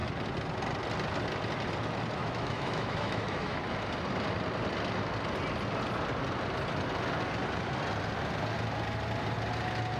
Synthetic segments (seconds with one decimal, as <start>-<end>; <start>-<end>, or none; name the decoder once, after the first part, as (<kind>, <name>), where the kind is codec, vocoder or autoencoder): 2.2-3.6 (autoencoder, DAC-VAE)